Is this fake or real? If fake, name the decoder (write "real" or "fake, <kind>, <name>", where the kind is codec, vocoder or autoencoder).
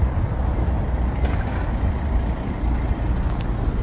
real